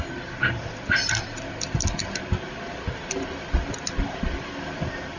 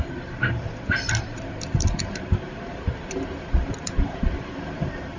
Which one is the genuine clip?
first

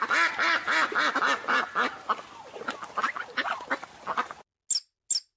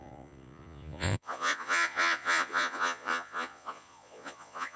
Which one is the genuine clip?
first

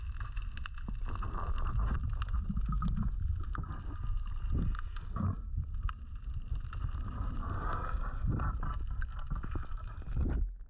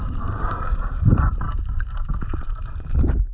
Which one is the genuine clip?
first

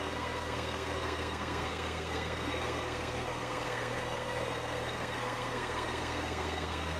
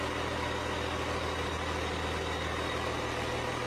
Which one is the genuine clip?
second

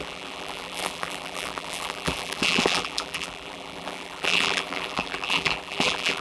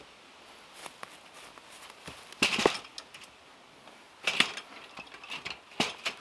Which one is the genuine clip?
second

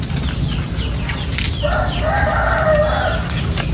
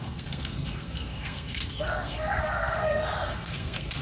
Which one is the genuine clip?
first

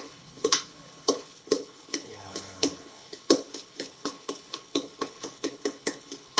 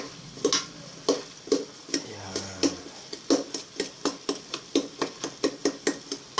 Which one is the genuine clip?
second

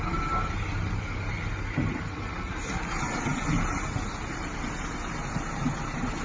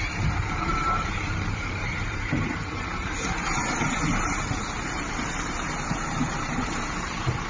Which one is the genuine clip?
first